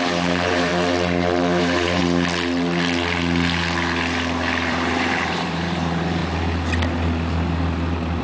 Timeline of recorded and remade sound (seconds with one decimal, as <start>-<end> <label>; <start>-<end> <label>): 0.0-0.7 remade; 0.7-1.6 recorded; 1.6-2.0 remade; 2.0-4.7 recorded; 4.7-6.2 remade; 6.2-8.2 recorded